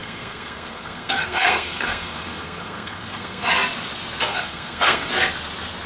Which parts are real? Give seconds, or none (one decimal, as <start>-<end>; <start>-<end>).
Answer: 3.5-4.2; 5.1-5.9